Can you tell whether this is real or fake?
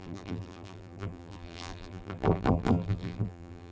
fake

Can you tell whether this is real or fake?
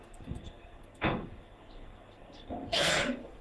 fake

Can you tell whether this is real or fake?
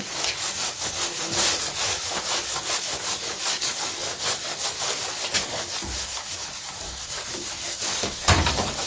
fake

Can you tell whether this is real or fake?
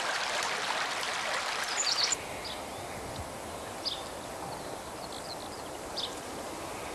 real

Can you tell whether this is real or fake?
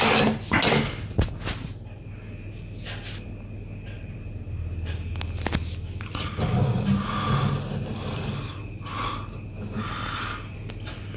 real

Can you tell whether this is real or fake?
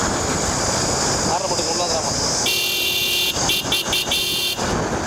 real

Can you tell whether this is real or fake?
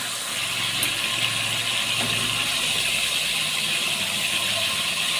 real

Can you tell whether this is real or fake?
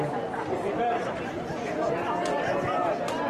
real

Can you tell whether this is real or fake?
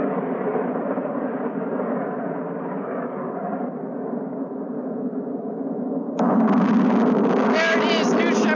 real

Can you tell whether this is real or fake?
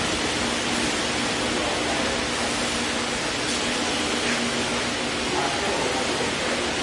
real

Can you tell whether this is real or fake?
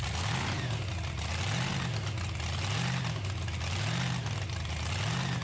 real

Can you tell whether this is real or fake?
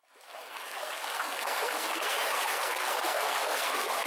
fake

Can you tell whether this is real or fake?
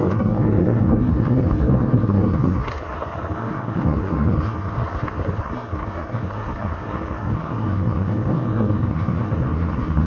fake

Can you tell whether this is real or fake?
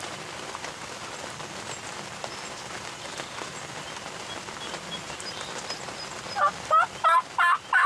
real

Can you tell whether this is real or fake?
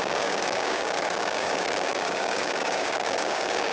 fake